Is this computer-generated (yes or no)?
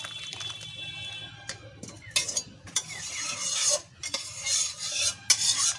no